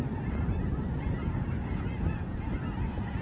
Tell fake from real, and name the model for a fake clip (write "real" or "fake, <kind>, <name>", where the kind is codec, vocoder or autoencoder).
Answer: real